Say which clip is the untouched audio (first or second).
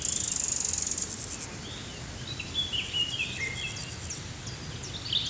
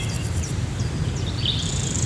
first